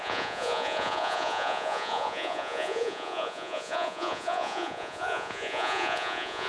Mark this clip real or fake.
fake